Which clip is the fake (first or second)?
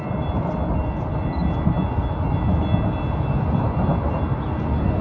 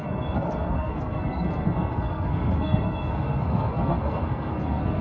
second